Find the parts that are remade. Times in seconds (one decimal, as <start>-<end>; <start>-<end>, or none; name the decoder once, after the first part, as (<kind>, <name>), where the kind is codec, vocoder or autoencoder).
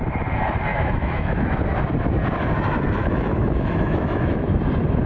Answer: 0.7-1.6 (autoencoder, DAC-VAE); 3.0-4.6